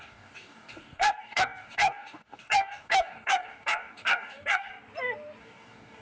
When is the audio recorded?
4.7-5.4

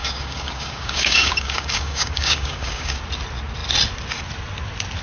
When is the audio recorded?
3.0-5.0

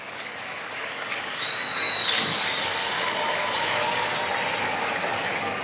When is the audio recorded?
4.1-4.6

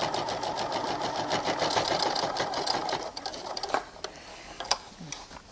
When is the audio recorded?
0.0-4.3; 4.9-5.5

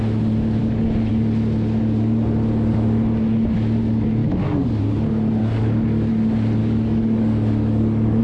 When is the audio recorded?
0.0-0.6; 1.1-4.2; 4.8-5.4; 6.1-6.6

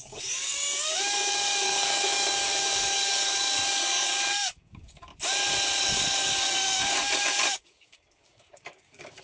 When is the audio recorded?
5.1-5.8